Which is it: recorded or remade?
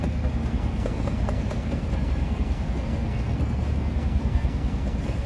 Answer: remade